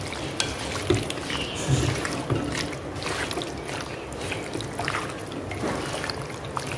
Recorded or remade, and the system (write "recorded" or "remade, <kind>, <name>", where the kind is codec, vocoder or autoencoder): recorded